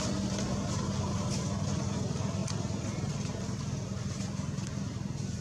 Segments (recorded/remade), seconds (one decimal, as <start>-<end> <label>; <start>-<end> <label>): 0.0-5.4 recorded